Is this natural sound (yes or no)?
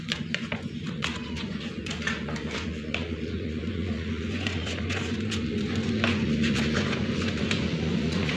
no